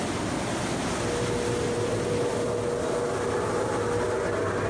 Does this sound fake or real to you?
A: real